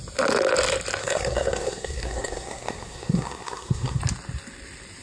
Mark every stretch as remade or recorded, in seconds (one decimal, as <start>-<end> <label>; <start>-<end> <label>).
0.0-1.0 recorded; 1.0-4.0 remade; 4.0-5.0 recorded